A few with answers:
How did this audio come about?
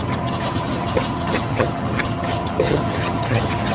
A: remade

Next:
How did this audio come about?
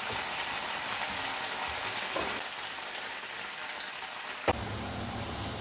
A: recorded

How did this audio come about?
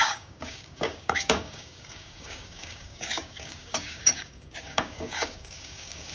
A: remade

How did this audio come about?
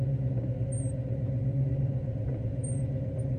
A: remade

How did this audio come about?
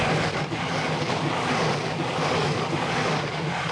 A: remade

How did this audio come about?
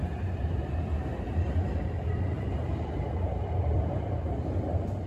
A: remade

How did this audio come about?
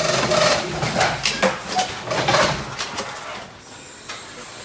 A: recorded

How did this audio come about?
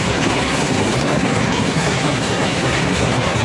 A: remade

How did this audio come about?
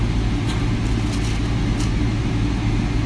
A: recorded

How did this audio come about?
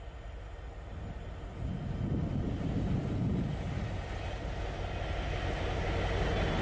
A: recorded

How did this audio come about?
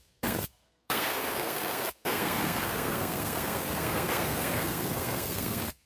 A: remade